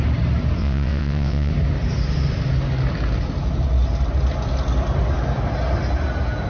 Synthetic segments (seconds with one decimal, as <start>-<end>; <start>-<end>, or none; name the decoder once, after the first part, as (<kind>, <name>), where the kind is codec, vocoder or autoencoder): 0.6-1.5 (vocoder, WaveNeXt)